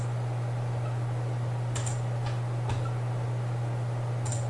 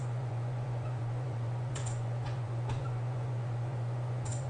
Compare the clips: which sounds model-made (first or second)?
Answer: second